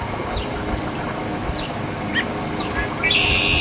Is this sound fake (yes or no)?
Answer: no